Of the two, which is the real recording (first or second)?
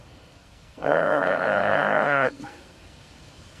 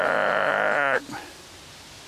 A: second